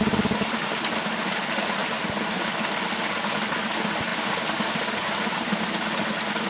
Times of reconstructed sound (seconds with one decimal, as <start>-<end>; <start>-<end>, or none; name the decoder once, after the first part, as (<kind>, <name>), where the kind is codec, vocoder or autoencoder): none